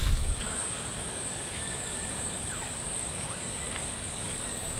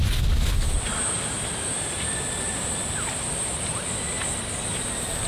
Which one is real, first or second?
second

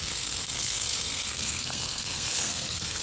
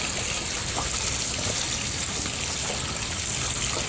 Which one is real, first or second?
second